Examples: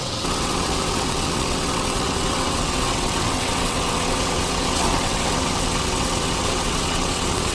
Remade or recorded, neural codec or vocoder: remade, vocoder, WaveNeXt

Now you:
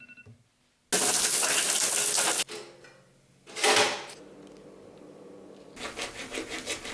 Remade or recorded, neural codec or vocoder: recorded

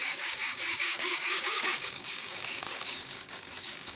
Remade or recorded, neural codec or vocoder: remade, codec, DAC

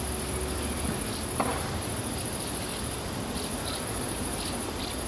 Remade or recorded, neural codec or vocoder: remade, vocoder, BigVGAN v2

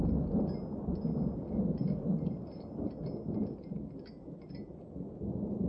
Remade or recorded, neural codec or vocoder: recorded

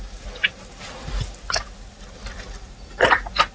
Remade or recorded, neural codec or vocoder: recorded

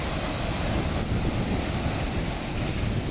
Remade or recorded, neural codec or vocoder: recorded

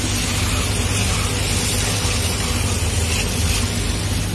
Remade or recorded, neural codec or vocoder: recorded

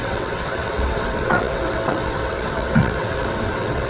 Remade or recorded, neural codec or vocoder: remade, vocoder, WaveNeXt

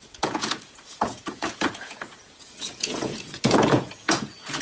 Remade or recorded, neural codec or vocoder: remade, vocoder, Vocos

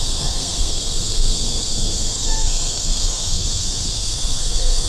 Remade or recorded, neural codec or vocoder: remade, codec, SNAC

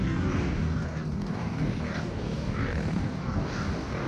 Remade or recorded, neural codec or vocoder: remade, codec, DAC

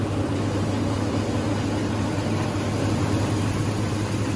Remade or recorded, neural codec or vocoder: recorded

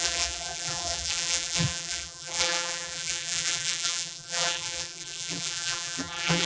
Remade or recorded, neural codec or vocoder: remade, vocoder, BigVGAN v2